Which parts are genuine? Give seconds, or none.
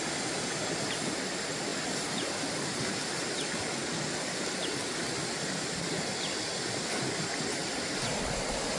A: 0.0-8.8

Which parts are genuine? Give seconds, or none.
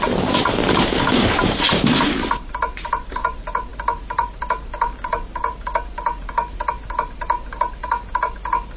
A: none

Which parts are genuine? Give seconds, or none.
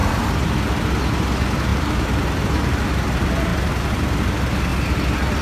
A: 0.5-1.7; 2.8-3.5; 4.2-5.4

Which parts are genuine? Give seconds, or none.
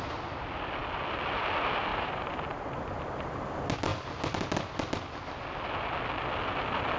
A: 0.0-1.9; 3.4-7.0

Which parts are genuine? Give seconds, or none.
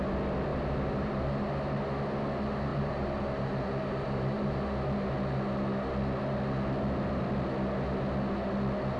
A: 0.0-0.5; 1.5-2.7; 4.6-9.0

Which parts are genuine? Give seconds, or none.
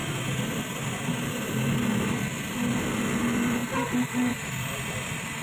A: 0.0-3.6; 4.3-5.4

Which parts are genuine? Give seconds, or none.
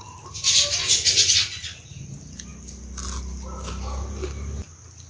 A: 0.0-5.1